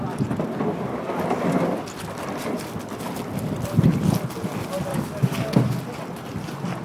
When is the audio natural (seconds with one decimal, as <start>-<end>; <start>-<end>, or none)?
0.0-4.9; 5.8-6.8

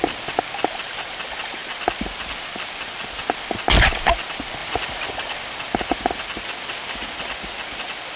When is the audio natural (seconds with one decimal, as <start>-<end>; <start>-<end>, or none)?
0.0-8.2

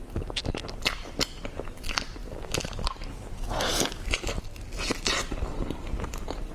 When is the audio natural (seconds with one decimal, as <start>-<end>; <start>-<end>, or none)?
0.0-6.5